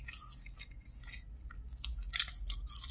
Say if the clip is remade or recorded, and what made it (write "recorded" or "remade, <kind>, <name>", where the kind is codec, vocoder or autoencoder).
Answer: recorded